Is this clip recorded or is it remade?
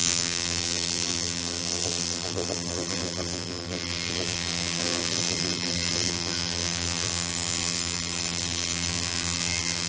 remade